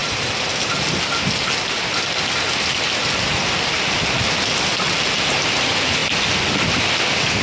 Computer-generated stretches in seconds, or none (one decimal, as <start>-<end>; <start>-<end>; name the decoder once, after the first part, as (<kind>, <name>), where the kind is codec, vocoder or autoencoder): none